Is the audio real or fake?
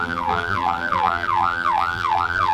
fake